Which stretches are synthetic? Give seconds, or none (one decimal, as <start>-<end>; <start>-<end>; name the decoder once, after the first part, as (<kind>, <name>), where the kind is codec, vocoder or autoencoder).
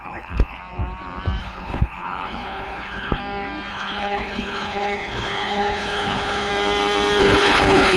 0.0-0.6 (codec, HILCodec); 1.4-3.2; 3.7-6.5; 7.2-8.0